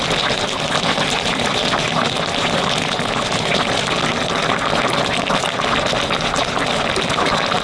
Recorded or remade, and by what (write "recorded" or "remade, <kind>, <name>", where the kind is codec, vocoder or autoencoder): recorded